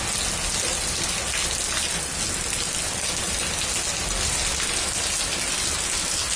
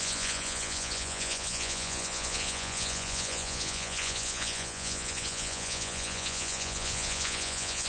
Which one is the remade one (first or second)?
second